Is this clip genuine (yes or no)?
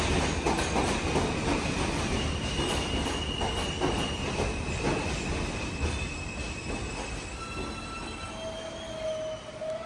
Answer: yes